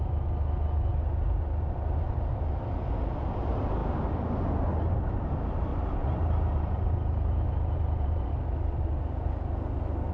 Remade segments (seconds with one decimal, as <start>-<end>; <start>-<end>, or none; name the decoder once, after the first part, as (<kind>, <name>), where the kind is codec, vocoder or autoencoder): 5.7-8.3 (vocoder, BigVGAN v2)